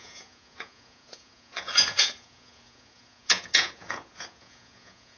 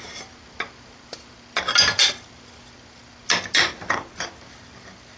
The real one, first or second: second